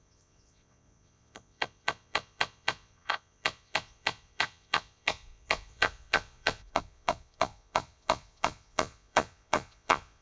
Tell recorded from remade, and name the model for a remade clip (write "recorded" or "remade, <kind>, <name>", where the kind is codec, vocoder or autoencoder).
remade, vocoder, Vocos